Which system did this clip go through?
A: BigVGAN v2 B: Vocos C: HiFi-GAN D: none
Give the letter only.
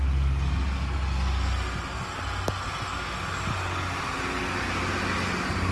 D